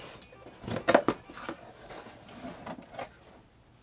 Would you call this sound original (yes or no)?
yes